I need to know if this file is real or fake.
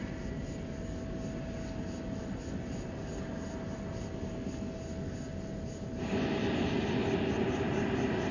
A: real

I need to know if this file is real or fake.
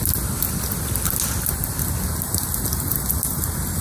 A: real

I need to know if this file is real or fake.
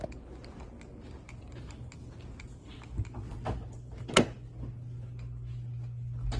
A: real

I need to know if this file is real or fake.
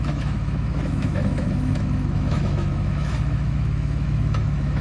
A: fake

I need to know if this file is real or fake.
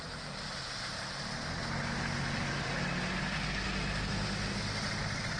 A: real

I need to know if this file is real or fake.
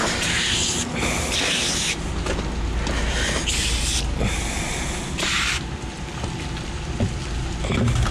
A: real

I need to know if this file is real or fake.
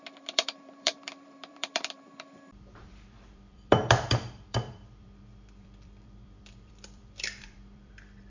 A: fake